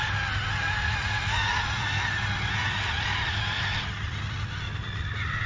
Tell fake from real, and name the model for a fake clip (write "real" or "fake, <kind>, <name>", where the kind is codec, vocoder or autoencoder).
real